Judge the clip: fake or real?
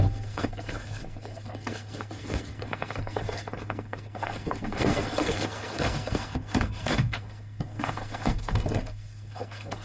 fake